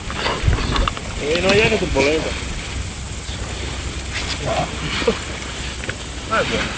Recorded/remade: recorded